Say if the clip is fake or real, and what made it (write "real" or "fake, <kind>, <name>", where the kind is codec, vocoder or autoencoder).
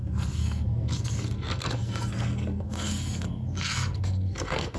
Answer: fake, codec, SNAC